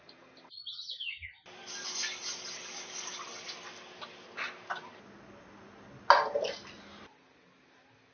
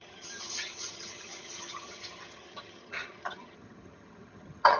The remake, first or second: second